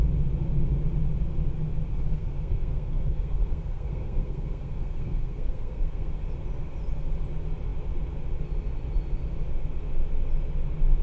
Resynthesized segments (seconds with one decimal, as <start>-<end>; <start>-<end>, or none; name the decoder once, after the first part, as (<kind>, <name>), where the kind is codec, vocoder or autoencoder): 1.9-6.1 (codec, SNAC)